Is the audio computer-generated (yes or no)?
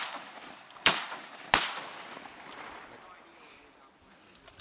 yes